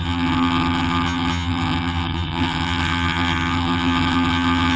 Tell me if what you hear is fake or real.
fake